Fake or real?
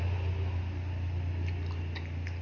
real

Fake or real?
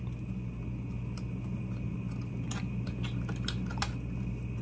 real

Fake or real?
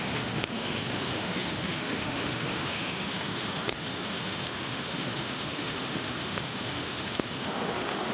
fake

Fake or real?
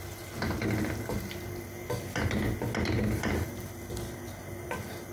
real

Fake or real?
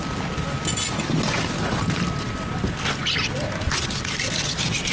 real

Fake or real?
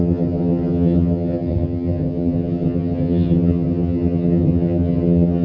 fake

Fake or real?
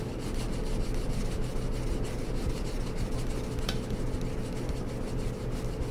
real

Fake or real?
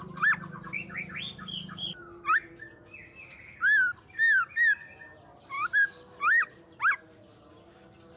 real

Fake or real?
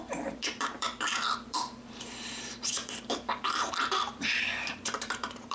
fake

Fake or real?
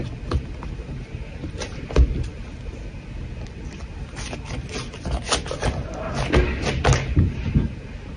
real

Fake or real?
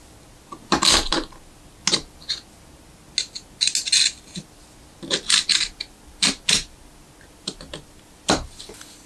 real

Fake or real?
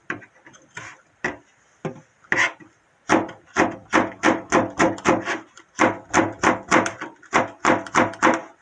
real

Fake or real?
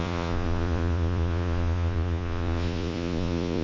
fake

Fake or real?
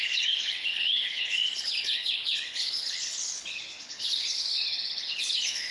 fake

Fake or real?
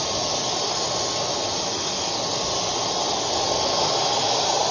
real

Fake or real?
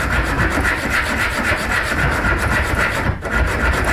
fake